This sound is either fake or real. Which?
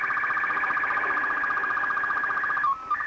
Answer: real